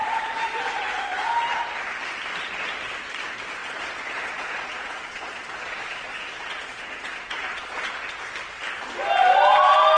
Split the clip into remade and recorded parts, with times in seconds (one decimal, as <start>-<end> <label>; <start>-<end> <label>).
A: 0.0-0.6 remade; 0.6-3.6 recorded; 3.6-7.9 remade; 7.9-10.0 recorded